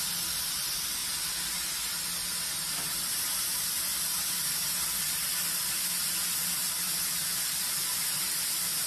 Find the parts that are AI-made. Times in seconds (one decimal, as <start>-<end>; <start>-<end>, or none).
0.0-1.0; 4.9-8.9